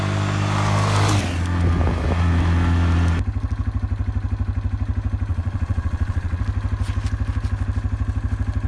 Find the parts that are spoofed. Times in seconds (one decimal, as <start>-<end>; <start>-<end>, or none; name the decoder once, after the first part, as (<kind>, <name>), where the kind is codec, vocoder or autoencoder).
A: 5.3-6.4 (vocoder, Vocos)